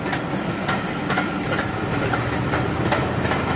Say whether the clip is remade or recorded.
recorded